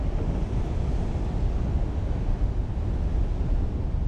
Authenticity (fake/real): real